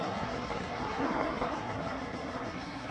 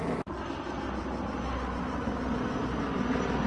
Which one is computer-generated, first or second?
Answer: first